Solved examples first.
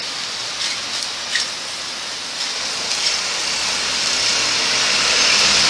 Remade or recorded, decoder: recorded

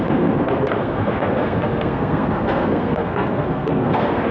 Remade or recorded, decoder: remade, codec, SNAC